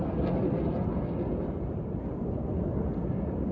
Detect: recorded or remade recorded